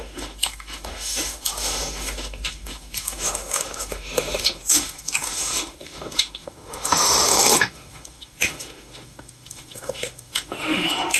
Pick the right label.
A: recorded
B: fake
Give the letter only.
B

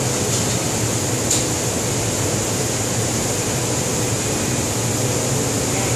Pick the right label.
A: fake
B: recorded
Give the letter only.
B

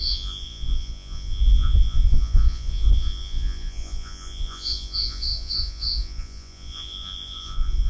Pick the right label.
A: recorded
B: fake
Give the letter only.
B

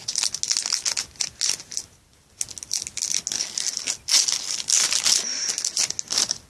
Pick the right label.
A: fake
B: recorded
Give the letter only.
B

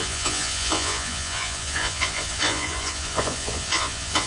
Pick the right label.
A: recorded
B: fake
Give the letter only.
B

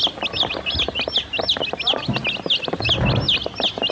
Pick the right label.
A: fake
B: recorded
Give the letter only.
B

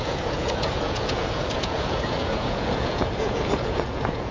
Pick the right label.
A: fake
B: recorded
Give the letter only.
A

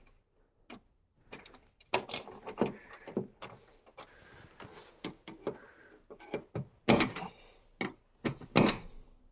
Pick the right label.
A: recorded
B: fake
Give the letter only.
A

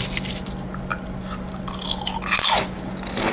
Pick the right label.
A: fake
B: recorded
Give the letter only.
B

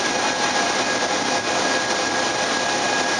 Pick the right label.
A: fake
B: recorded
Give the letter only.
B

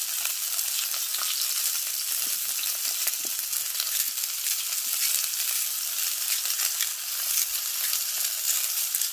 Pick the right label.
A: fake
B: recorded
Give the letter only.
B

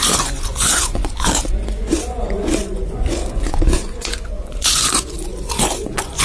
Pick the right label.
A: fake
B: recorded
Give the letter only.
A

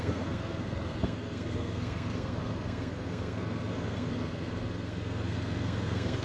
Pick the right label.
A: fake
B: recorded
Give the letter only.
A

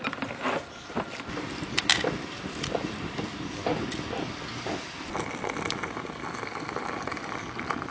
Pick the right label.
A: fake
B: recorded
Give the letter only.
B